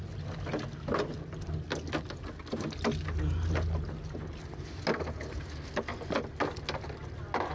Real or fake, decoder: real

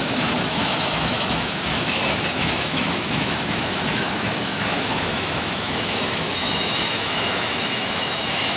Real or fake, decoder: fake, autoencoder, DAC-VAE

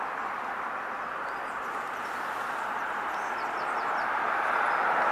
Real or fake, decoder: real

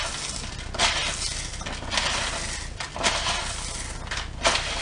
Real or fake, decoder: real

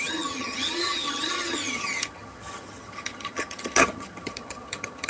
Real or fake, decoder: fake, vocoder, HiFi-GAN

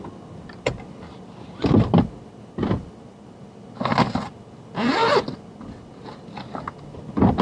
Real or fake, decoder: real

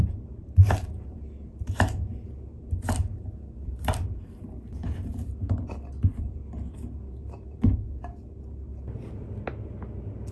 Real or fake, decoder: real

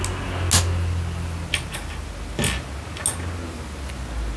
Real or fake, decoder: real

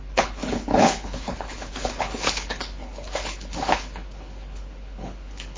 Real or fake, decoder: fake, codec, HILCodec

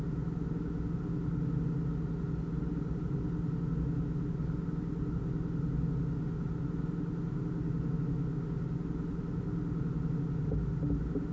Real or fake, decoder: real